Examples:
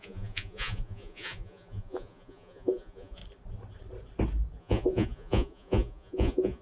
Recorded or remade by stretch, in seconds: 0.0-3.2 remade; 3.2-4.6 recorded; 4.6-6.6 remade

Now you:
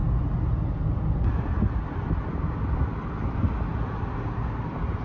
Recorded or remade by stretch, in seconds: 0.0-5.0 recorded

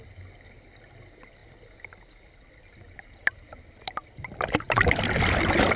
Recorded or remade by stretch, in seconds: 0.0-5.8 recorded

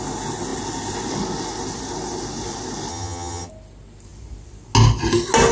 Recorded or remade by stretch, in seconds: 0.0-2.9 recorded; 2.9-3.5 remade; 3.5-5.5 recorded

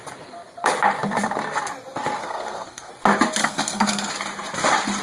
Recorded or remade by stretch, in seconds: 0.0-2.2 recorded; 2.2-2.9 remade; 2.9-3.4 recorded; 3.4-4.1 remade; 4.1-5.0 recorded

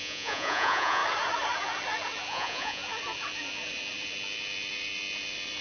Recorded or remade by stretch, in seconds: 0.0-1.0 remade; 1.0-2.3 recorded; 2.3-2.8 remade; 2.8-5.6 recorded

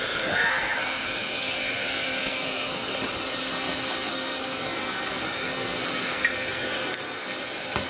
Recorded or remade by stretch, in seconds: 0.0-2.9 remade; 2.9-3.4 recorded; 3.4-7.9 remade

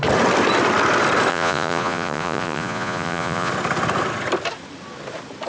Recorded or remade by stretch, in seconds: 0.0-1.3 recorded; 1.3-3.5 remade; 3.5-5.5 recorded